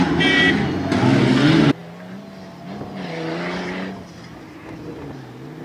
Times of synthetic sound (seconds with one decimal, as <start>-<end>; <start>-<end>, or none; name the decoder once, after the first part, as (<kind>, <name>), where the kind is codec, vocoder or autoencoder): none